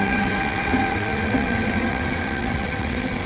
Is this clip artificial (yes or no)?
yes